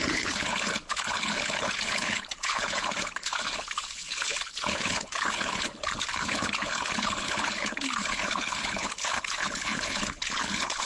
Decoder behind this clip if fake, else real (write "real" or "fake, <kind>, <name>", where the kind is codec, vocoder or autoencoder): fake, codec, HILCodec